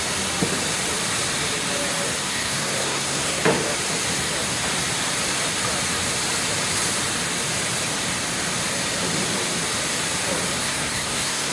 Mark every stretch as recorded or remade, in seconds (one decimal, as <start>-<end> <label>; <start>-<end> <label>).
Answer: 0.0-2.3 recorded; 2.3-3.4 remade; 3.4-10.6 recorded; 10.6-11.5 remade